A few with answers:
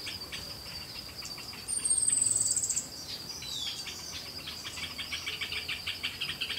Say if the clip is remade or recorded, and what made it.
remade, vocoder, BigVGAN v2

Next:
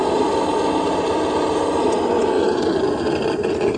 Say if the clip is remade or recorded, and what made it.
recorded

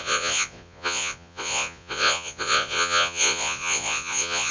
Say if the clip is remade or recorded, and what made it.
remade, vocoder, Vocos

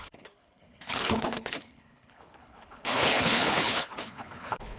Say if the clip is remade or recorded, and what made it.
remade, codec, HILCodec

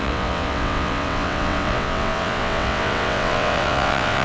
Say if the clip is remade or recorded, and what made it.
remade, vocoder, WaveNeXt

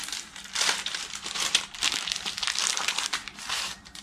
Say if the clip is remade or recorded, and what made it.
remade, vocoder, BigVGAN v2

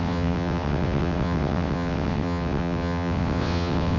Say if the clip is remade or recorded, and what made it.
remade, vocoder, WaveNeXt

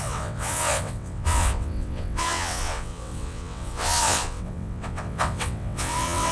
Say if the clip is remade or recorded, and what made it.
remade, vocoder, WaveNeXt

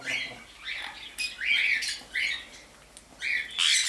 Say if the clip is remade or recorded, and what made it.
recorded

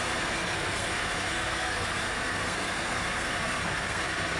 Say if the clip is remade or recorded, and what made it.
remade, codec, SNAC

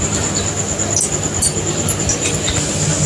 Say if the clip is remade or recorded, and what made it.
recorded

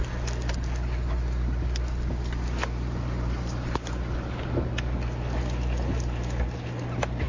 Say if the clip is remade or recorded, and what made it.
recorded